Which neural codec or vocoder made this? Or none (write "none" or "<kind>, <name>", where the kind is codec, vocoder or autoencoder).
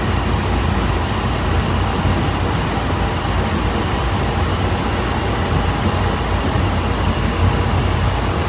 none